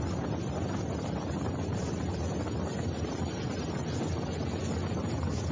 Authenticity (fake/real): real